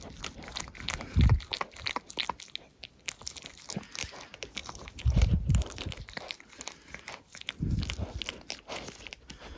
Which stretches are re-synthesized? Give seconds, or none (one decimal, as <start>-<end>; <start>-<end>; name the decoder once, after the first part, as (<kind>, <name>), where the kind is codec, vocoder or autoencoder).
4.6-7.1 (vocoder, BigVGAN v2)